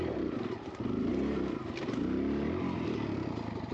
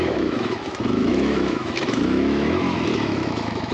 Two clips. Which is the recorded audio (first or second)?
first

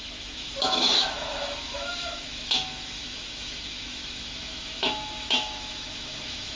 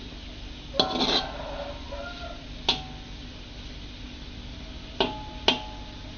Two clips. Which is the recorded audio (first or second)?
second